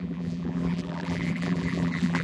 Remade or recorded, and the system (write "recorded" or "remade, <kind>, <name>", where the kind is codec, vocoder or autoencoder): remade, vocoder, BigVGAN v2